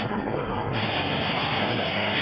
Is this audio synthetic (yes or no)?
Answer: yes